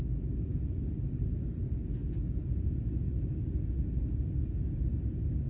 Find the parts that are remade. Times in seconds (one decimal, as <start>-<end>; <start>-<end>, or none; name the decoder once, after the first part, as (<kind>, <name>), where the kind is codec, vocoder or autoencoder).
none